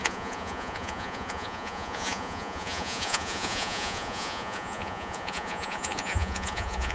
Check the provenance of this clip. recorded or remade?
remade